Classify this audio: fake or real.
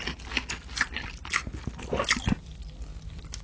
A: real